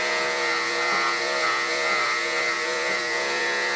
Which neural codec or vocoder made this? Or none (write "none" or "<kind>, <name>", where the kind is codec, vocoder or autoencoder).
vocoder, Vocos